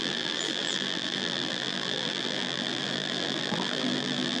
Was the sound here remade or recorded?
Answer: remade